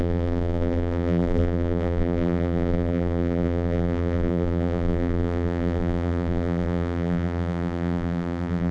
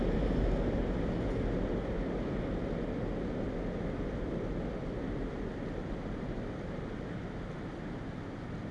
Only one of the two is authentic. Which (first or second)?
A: second